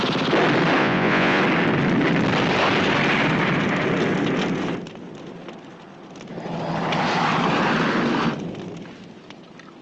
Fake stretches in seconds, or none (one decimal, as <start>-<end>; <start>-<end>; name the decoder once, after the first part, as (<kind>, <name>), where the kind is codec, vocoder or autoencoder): 0.8-1.4 (vocoder, Vocos)